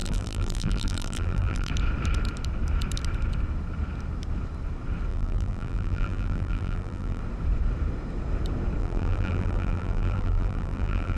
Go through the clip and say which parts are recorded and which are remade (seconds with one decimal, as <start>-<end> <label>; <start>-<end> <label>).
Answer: 0.0-1.7 remade; 1.7-5.1 recorded; 5.1-7.2 remade; 7.2-8.8 recorded; 8.8-11.2 remade